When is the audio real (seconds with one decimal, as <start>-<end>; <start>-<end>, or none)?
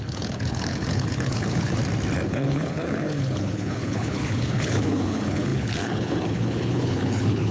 1.8-2.3